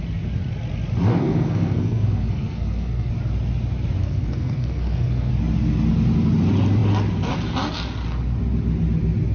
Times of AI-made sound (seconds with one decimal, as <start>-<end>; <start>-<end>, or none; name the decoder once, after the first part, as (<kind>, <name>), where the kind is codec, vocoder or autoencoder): 1.1-3.1 (codec, SNAC); 4.0-5.3